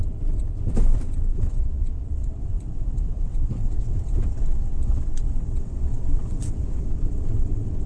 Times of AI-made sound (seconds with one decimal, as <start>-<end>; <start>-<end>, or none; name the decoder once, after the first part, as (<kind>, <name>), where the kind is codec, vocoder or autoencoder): 1.3-7.9 (vocoder, WaveNeXt)